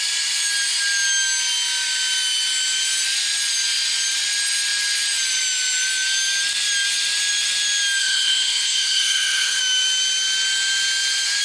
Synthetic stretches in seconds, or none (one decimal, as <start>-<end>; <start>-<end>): 8.0-9.6